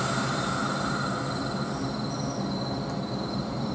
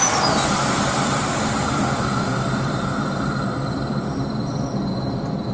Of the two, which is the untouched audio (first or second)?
first